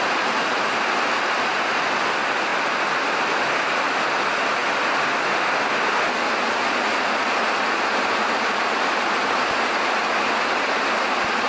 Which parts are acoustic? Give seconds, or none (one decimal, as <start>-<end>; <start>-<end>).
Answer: 0.0-11.5